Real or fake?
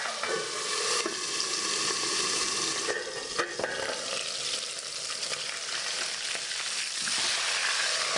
real